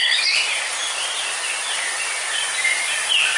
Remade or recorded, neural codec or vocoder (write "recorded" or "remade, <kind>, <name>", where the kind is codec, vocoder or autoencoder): recorded